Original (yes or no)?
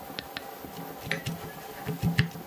yes